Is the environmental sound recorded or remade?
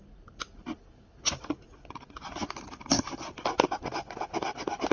recorded